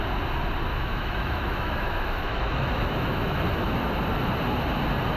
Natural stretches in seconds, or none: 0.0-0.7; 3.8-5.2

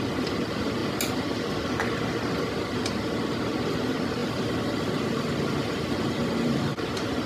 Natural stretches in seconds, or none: 0.0-4.2; 6.7-7.3

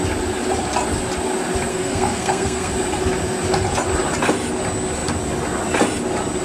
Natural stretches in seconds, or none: 0.0-1.7; 2.7-6.4

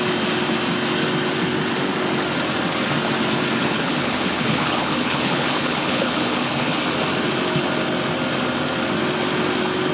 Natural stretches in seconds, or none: 0.0-3.6; 6.8-9.9

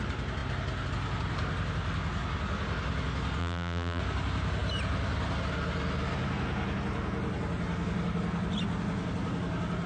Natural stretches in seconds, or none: 0.0-3.4; 4.0-9.9